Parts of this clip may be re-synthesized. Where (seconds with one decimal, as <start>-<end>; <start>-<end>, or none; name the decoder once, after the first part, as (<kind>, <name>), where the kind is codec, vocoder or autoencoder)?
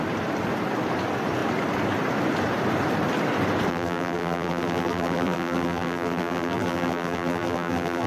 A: 3.7-8.1 (vocoder, BigVGAN v2)